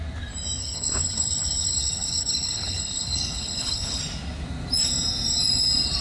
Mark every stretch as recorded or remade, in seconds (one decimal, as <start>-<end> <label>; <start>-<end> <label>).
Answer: 0.0-0.6 recorded; 0.6-4.0 remade; 4.0-6.0 recorded